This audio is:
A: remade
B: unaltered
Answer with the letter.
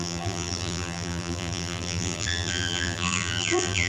A